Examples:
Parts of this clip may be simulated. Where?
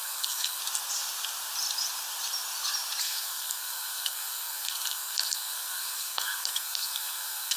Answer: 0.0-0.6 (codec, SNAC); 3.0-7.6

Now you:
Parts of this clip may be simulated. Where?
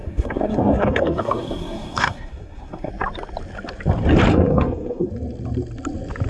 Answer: 0.0-2.9 (codec, SNAC); 4.3-5.1